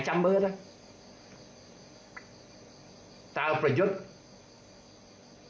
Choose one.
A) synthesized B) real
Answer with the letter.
B